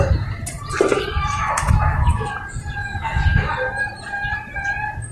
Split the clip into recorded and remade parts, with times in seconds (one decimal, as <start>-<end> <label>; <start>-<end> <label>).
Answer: 0.0-1.2 recorded; 1.2-2.3 remade; 2.3-2.8 recorded; 2.8-3.5 remade; 3.5-5.1 recorded